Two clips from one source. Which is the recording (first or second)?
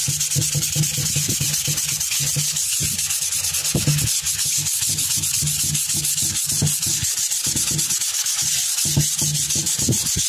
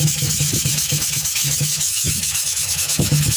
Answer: first